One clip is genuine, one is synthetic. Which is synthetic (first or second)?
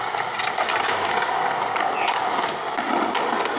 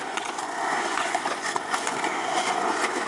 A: second